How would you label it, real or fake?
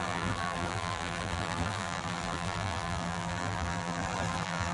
fake